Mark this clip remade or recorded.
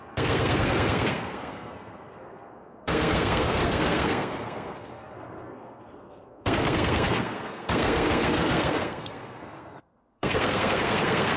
remade